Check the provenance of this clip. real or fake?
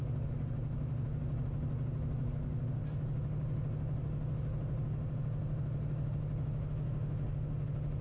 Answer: real